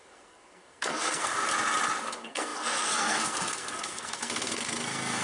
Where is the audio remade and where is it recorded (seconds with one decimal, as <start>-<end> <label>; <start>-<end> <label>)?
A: 0.0-1.4 remade; 1.4-2.0 recorded; 2.0-5.2 remade